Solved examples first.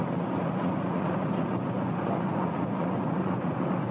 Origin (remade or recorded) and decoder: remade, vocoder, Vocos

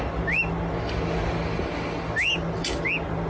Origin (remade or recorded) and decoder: recorded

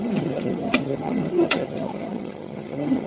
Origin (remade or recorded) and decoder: remade, vocoder, HiFi-GAN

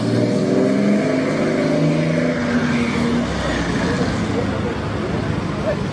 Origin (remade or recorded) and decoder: recorded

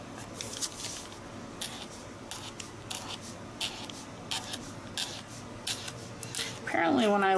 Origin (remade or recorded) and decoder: recorded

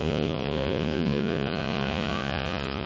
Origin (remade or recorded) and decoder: remade, vocoder, Vocos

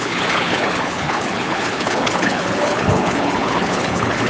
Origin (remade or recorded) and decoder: remade, codec, HILCodec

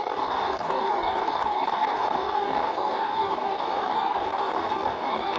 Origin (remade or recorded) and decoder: remade, codec, DAC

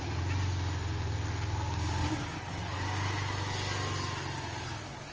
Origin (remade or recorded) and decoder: recorded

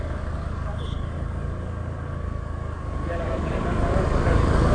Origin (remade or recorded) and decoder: remade, codec, DAC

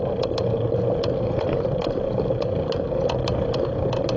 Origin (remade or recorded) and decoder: recorded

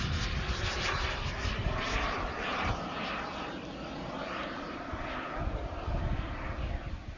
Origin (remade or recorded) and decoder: recorded